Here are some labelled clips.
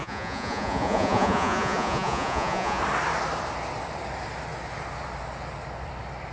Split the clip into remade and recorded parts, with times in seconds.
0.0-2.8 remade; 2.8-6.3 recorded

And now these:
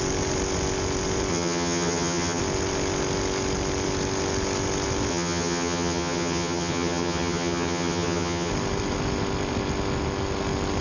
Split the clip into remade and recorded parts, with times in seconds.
0.0-1.3 recorded; 1.3-2.4 remade; 2.4-5.1 recorded; 5.1-8.5 remade; 8.5-10.8 recorded

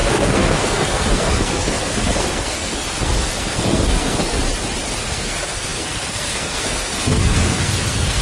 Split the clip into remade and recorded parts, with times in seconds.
0.0-4.5 remade; 4.5-5.0 recorded; 5.0-8.2 remade

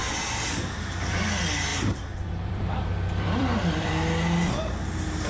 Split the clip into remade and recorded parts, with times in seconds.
0.0-1.7 recorded; 1.7-3.9 remade; 3.9-5.3 recorded